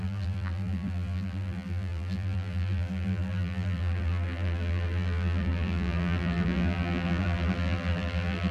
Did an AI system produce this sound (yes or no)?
yes